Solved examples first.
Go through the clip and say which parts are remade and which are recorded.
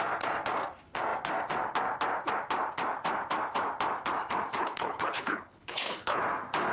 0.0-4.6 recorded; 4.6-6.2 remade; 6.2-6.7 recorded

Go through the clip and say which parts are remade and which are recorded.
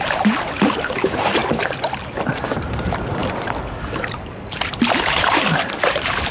0.0-1.4 remade; 1.4-2.0 recorded; 2.0-6.3 remade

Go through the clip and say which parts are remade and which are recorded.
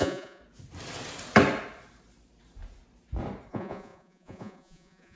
0.0-0.4 remade; 0.4-3.5 recorded; 3.5-5.2 remade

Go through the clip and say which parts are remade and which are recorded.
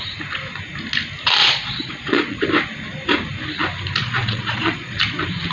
0.0-1.4 recorded; 1.4-2.4 remade; 2.4-4.0 recorded; 4.0-5.0 remade; 5.0-5.5 recorded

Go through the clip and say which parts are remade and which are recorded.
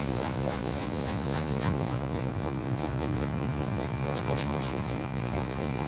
0.0-5.9 remade